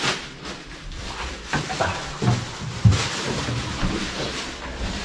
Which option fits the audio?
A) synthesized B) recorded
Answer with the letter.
B